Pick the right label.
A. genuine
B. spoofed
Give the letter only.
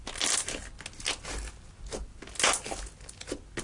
A